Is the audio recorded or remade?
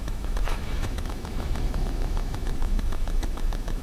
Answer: remade